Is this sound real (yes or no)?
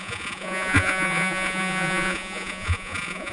no